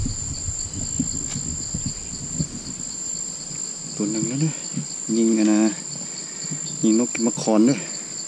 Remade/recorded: recorded